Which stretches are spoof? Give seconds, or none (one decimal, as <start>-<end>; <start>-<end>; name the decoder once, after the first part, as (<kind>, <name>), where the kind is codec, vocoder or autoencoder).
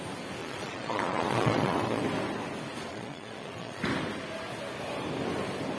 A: 0.4-2.0 (vocoder, Vocos); 2.9-3.8